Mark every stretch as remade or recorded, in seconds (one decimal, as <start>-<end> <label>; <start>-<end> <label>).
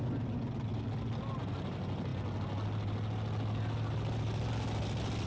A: 0.0-5.3 recorded